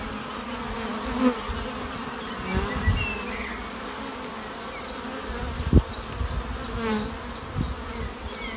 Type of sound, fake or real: real